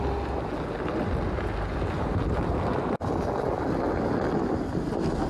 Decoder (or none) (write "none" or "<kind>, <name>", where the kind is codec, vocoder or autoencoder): none